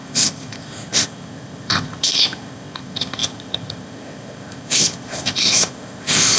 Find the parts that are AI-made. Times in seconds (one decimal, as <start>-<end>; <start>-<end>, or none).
0.0-6.4